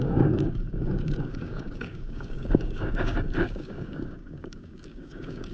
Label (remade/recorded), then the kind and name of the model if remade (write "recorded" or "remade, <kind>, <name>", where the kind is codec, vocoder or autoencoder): remade, codec, DAC